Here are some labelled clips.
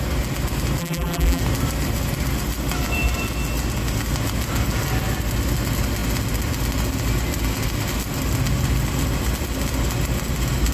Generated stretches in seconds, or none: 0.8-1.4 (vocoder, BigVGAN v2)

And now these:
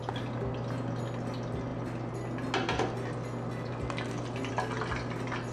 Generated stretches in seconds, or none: none

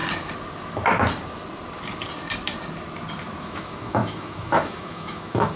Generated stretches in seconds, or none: 3.4-5.6 (autoencoder, DAC-VAE)

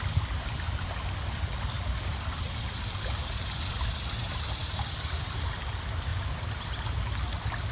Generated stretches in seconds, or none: 2.1-4.0 (vocoder, BigVGAN v2); 4.6-5.3; 6.1-6.8